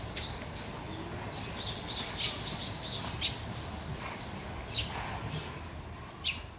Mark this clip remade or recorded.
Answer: recorded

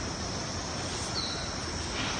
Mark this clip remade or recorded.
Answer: recorded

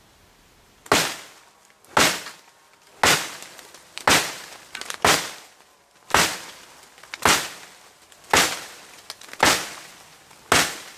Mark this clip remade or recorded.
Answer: recorded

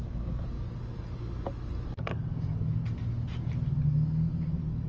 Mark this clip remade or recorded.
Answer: recorded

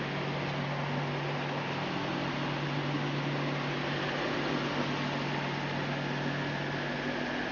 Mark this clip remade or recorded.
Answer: recorded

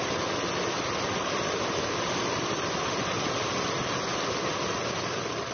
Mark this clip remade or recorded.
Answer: recorded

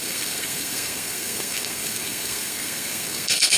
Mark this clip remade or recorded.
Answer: remade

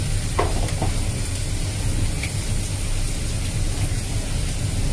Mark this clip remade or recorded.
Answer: recorded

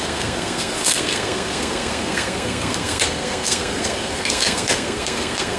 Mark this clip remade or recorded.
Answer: remade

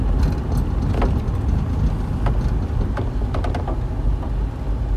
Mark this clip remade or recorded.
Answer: recorded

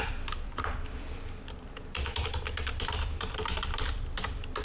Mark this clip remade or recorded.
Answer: remade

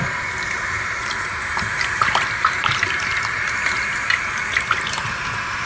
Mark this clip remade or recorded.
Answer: remade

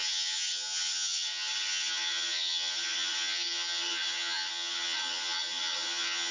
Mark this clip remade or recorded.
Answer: remade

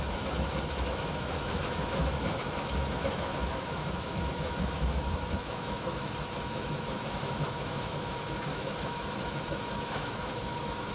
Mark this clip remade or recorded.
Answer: remade